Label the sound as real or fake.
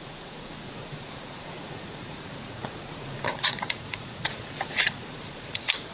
fake